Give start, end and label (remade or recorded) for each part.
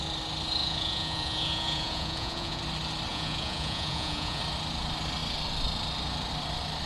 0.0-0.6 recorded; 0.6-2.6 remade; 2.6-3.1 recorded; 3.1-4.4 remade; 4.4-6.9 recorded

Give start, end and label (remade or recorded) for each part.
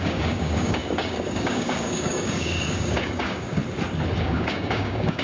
0.0-3.6 remade; 3.6-4.2 recorded; 4.2-5.2 remade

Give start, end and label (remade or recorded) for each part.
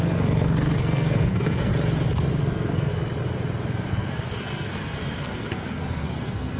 0.0-1.7 remade; 1.7-2.3 recorded; 2.3-2.9 remade; 2.9-3.9 recorded; 3.9-6.6 remade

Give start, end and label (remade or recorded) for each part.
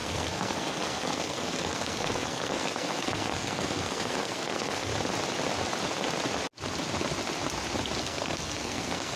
0.0-4.9 remade; 4.9-8.0 recorded; 8.0-9.2 remade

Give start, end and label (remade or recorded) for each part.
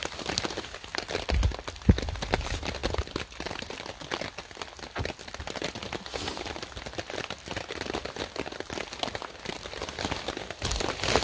0.0-11.2 recorded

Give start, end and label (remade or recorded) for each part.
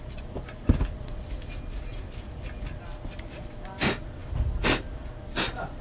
0.0-5.8 recorded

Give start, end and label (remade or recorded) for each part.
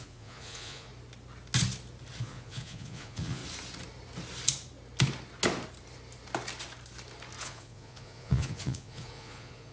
0.0-0.9 remade; 0.9-2.2 recorded; 2.2-3.4 remade; 3.4-7.4 recorded; 7.4-9.7 remade